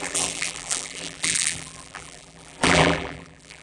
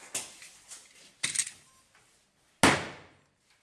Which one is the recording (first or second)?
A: second